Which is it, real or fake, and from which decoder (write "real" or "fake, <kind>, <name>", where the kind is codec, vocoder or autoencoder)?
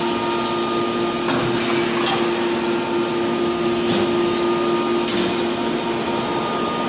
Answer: real